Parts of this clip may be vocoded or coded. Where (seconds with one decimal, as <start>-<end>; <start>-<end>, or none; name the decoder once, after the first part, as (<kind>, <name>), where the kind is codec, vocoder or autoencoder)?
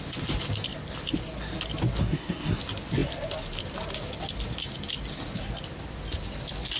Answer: 2.0-2.6 (codec, SNAC)